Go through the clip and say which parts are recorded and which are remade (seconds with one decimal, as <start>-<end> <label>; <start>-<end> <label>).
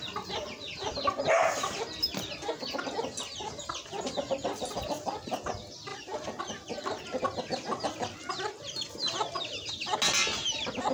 0.0-5.9 recorded; 5.9-7.2 remade; 7.2-10.9 recorded